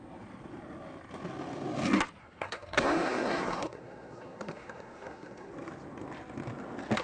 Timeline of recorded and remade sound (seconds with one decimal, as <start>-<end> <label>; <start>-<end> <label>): 0.0-2.2 recorded; 2.2-5.5 remade; 5.5-7.0 recorded